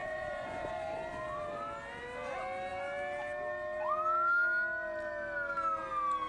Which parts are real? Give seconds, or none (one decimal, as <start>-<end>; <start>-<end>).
0.7-6.3